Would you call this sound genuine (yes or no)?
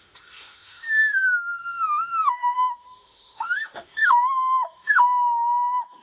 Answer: no